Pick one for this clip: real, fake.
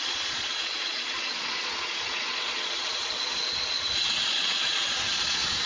fake